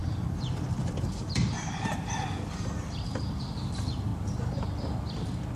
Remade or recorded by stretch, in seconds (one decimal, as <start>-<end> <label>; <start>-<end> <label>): 0.0-4.1 remade; 4.1-5.6 recorded

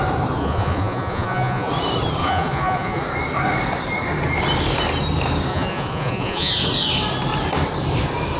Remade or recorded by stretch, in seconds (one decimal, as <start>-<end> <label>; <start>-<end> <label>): 0.0-0.4 recorded; 0.4-1.7 remade; 1.7-2.2 recorded; 2.2-3.0 remade; 3.0-5.5 recorded; 5.5-6.5 remade; 6.5-8.4 recorded